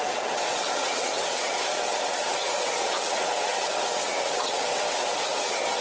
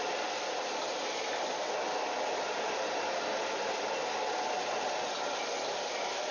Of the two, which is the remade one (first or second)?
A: first